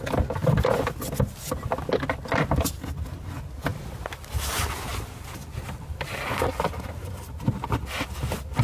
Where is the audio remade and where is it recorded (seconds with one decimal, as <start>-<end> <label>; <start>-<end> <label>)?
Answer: 0.0-4.9 recorded; 4.9-7.7 remade; 7.7-8.6 recorded